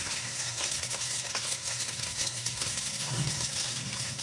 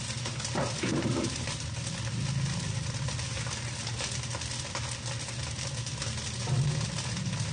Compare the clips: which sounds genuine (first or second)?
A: second